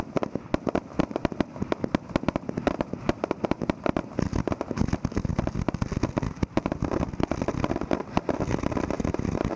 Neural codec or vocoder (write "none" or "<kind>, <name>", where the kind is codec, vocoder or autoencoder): none